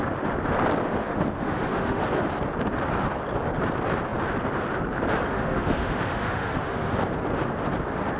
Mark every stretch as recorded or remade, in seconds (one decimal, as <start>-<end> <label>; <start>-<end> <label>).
0.0-1.0 recorded; 1.0-2.0 remade; 2.0-5.3 recorded; 5.3-7.0 remade; 7.0-8.2 recorded